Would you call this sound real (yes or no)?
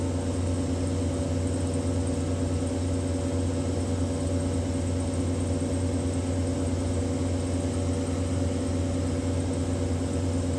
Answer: yes